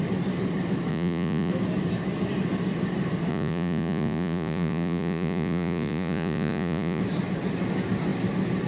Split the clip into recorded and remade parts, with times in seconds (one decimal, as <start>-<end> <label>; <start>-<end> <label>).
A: 0.0-0.9 recorded; 0.9-1.5 remade; 1.5-3.3 recorded; 3.3-7.0 remade; 7.0-8.7 recorded